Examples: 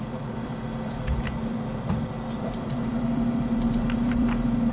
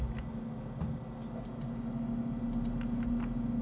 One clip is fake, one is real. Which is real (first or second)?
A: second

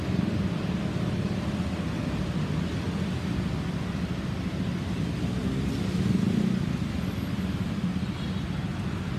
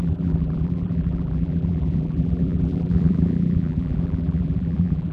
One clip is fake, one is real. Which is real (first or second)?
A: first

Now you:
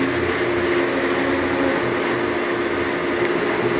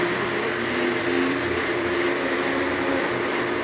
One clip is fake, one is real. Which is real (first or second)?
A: first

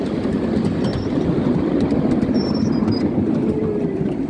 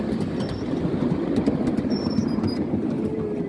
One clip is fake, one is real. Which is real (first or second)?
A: second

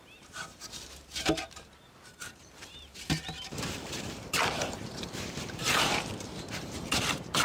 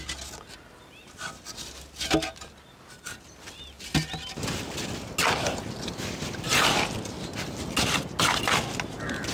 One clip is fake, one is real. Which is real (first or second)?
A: second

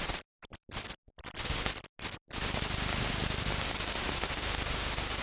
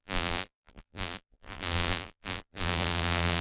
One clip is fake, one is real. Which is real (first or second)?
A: first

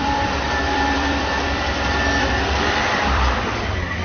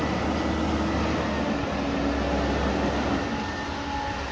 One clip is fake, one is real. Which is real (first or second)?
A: second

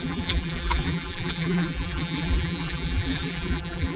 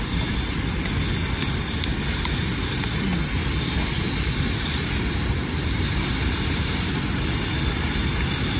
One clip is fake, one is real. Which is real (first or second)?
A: second